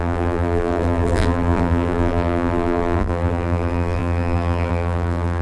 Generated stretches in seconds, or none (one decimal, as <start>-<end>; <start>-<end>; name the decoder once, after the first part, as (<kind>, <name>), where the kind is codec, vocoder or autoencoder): 0.0-5.4 (vocoder, BigVGAN v2)